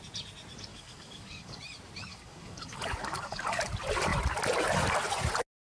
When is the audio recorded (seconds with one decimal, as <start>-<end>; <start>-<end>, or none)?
0.0-0.7; 1.6-2.1; 3.6-5.6